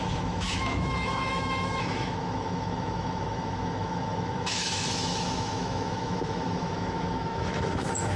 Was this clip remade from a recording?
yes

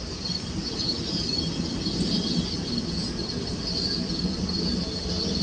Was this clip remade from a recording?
no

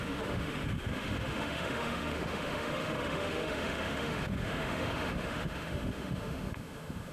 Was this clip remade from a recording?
yes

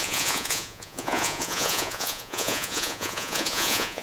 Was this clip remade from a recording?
yes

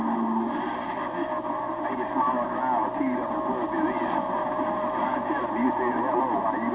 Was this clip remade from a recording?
no